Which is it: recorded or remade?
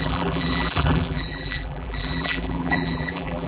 remade